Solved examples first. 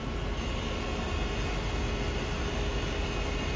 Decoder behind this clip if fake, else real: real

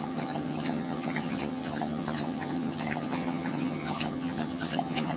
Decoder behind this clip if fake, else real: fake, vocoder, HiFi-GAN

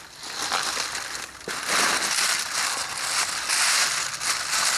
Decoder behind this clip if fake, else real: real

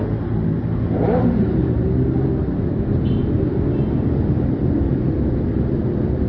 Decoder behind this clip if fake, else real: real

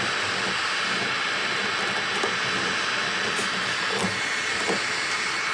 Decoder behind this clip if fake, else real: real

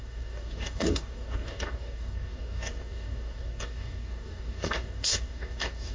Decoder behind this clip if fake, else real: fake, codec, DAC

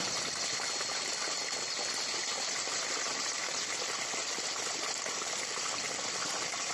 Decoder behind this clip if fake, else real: real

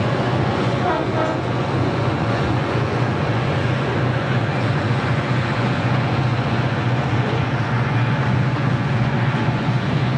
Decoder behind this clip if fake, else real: fake, vocoder, Vocos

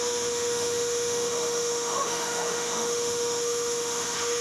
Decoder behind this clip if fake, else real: fake, autoencoder, DAC-VAE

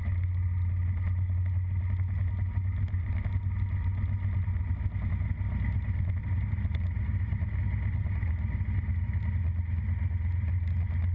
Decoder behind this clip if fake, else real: real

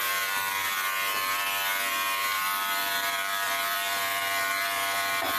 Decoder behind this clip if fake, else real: fake, vocoder, BigVGAN v2